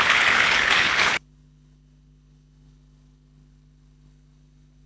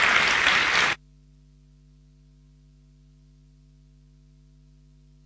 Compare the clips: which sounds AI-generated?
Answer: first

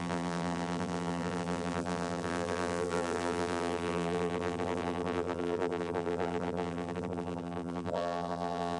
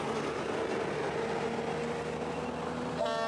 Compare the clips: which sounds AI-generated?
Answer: first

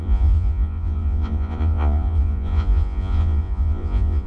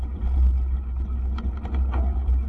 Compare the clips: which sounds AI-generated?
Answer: first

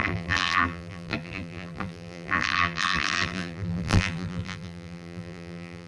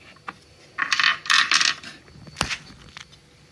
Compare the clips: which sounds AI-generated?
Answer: first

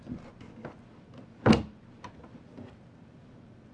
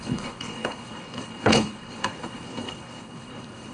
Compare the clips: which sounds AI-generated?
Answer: second